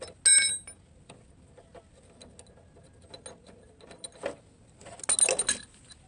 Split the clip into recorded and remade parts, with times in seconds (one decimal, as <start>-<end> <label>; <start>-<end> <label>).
0.0-6.1 recorded